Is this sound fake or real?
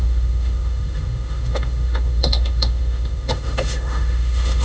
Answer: fake